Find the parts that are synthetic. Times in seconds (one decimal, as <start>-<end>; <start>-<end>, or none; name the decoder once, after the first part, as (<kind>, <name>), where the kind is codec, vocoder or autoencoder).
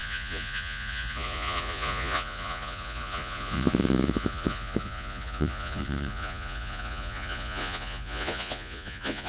0.0-9.3 (vocoder, Vocos)